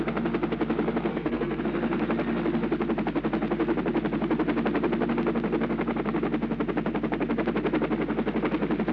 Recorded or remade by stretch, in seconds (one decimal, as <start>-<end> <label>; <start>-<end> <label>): 0.0-1.1 recorded; 1.1-1.6 remade; 1.6-8.9 recorded